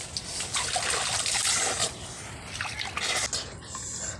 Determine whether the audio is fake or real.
real